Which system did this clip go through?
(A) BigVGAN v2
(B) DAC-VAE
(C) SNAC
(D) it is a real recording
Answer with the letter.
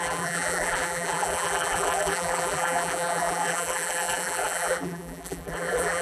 A